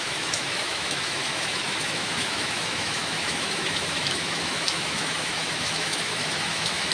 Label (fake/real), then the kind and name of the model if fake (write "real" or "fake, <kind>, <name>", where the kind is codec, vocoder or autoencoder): fake, autoencoder, DAC-VAE